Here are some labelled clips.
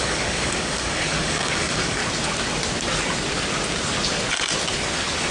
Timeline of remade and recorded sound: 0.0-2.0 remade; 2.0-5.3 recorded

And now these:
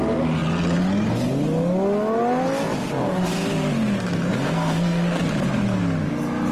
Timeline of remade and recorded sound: 0.0-4.3 recorded; 4.3-5.2 remade; 5.2-6.5 recorded